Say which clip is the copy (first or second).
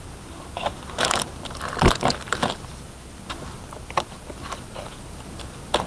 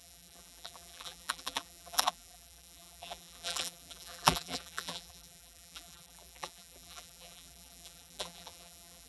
second